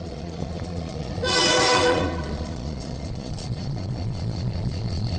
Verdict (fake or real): fake